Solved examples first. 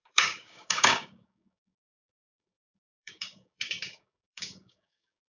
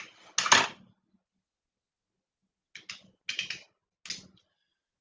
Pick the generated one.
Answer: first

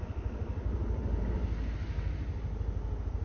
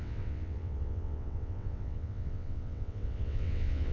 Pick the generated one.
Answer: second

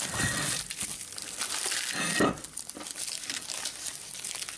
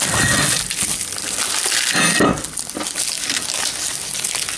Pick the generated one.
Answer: first